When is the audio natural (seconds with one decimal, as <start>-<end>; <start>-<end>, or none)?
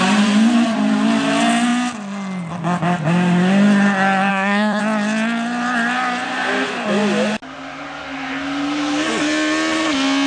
0.0-4.3; 4.8-10.3